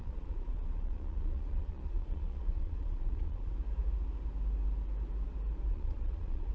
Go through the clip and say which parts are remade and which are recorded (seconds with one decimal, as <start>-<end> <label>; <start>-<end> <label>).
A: 0.0-3.5 remade; 3.5-5.7 recorded; 5.7-6.5 remade